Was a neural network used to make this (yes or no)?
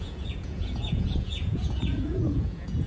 yes